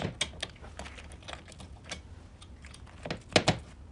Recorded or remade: recorded